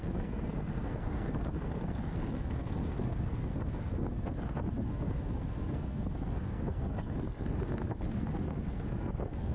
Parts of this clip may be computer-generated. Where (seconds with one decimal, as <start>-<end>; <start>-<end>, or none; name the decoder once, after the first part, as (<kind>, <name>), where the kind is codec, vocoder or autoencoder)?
0.0-9.5 (codec, SNAC)